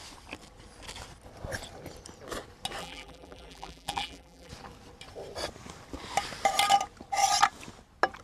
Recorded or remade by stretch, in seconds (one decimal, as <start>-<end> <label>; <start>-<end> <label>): 0.0-2.8 recorded; 2.8-4.5 remade; 4.5-8.2 recorded

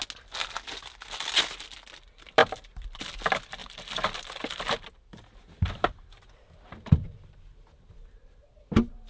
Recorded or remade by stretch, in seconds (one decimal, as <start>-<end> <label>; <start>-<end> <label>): 0.0-2.4 recorded; 2.4-3.0 remade; 3.0-3.6 recorded; 3.6-7.9 remade; 7.9-9.1 recorded

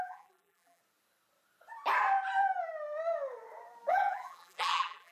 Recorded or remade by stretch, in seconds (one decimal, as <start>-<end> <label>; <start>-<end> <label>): 0.0-0.8 remade; 0.8-3.9 recorded; 3.9-5.1 remade

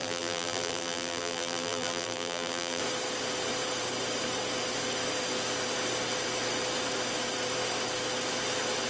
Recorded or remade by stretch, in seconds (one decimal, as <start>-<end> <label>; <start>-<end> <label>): 0.0-2.8 remade; 2.8-8.9 recorded

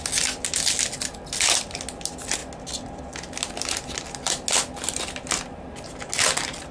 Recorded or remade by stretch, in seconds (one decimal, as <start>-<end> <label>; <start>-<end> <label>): 0.0-6.7 recorded

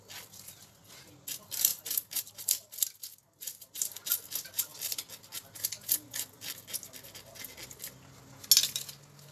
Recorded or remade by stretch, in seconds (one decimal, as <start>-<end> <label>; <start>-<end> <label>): 0.0-1.7 recorded; 1.7-2.7 remade; 2.7-9.3 recorded

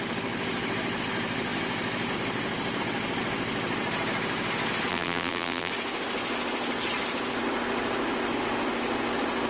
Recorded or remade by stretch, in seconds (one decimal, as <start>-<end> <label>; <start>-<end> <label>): 0.0-4.9 recorded; 4.9-5.7 remade; 5.7-9.5 recorded